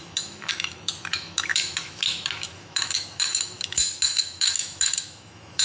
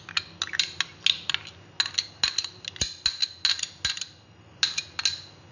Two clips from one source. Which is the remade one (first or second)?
first